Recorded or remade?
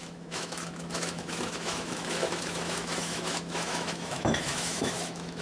remade